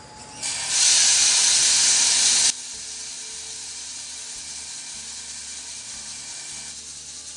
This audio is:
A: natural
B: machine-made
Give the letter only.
A